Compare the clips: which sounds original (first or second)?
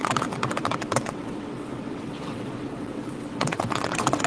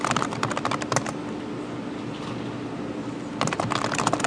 second